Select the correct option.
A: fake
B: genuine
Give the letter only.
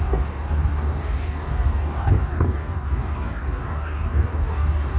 A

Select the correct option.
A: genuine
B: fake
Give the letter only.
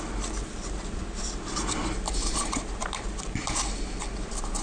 A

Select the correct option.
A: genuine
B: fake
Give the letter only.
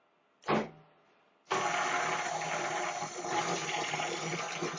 A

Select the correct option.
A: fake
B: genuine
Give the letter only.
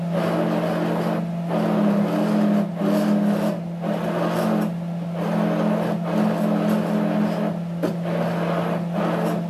B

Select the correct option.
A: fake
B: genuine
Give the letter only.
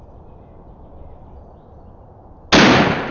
B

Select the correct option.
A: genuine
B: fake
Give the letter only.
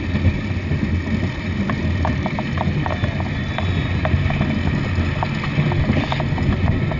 A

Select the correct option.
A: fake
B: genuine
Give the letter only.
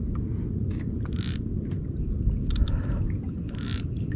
B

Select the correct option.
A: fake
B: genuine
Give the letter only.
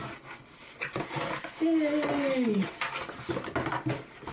B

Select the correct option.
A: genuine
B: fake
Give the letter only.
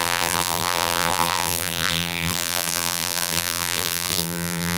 B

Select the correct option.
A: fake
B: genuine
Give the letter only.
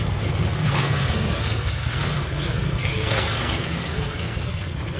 A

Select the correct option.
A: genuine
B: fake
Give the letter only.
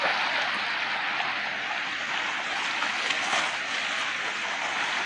A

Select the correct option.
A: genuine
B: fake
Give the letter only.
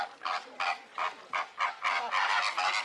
A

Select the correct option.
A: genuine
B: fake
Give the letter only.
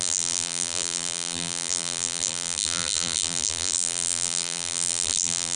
B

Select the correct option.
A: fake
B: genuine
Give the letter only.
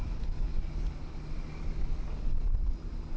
B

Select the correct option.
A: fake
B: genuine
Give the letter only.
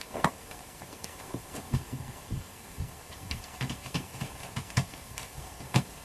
A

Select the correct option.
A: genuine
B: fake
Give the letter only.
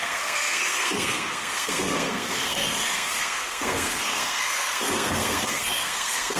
B